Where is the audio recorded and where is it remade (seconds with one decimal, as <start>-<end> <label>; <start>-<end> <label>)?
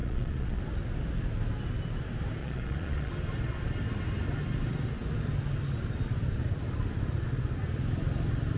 0.0-0.6 remade; 0.6-2.4 recorded; 2.4-3.1 remade; 3.1-8.6 recorded